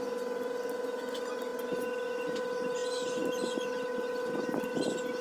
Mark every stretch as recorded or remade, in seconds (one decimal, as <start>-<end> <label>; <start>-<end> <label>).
0.0-5.2 recorded